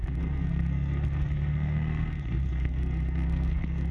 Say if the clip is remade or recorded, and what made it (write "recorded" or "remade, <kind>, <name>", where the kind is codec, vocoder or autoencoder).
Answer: remade, codec, SNAC